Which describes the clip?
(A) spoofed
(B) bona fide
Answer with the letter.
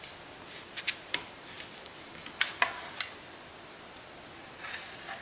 B